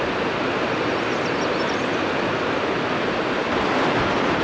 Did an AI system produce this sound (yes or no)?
no